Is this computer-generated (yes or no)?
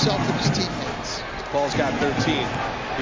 no